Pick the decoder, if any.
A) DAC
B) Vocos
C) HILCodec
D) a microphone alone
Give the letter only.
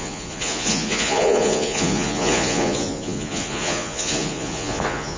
B